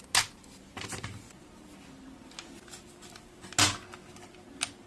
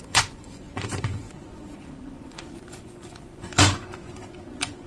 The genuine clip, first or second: first